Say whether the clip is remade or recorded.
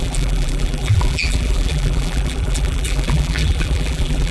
remade